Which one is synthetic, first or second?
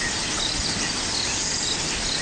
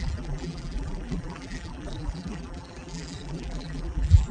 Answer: second